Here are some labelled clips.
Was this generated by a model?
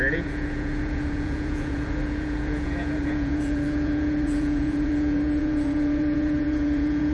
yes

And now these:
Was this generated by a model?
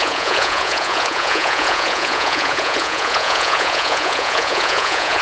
yes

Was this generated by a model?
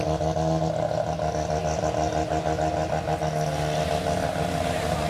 no